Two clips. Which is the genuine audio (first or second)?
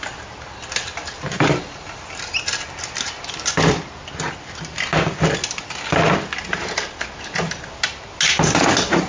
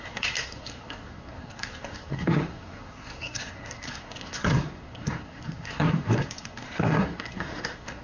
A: first